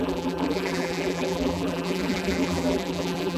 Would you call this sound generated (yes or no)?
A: yes